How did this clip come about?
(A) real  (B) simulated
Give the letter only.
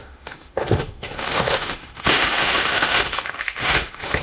B